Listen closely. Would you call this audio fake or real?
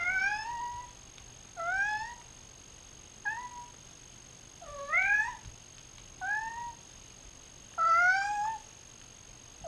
real